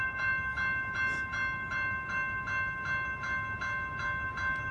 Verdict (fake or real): real